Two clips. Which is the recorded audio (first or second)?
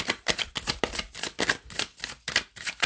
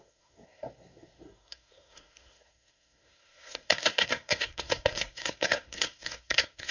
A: first